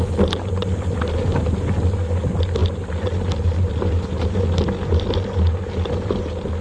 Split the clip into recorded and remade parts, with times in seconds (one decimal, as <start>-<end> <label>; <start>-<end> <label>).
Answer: 0.0-6.6 recorded